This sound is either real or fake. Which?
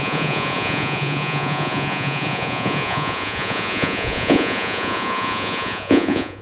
fake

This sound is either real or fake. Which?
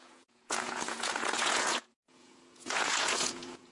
fake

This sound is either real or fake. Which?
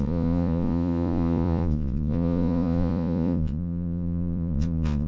fake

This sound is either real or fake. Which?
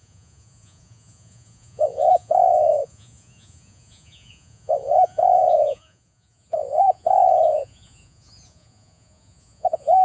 fake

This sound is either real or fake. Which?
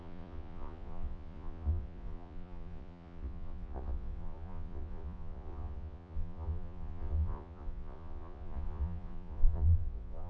fake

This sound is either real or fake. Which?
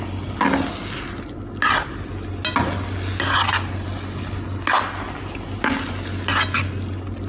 real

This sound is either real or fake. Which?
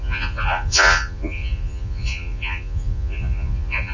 fake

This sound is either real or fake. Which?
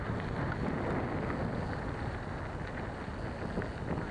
real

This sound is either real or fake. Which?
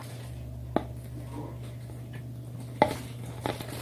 real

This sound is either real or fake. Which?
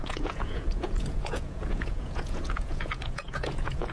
fake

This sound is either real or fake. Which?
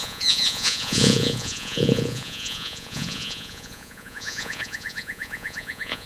fake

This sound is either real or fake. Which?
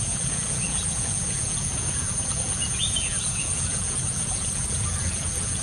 fake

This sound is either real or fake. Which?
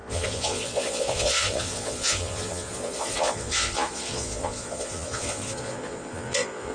fake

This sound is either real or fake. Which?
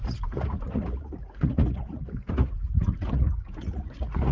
fake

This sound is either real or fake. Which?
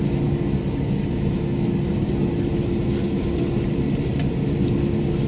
real